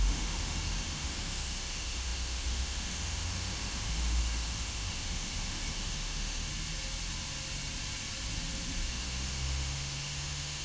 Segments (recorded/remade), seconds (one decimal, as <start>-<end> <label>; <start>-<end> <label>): 0.0-6.5 remade; 6.5-8.9 recorded; 8.9-10.6 remade